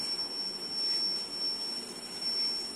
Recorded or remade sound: recorded